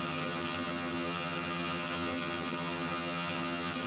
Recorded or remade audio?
remade